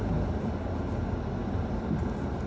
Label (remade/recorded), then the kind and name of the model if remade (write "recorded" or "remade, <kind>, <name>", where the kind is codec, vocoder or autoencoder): recorded